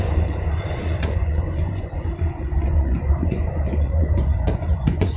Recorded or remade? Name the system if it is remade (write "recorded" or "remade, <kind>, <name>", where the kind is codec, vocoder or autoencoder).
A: remade, vocoder, Vocos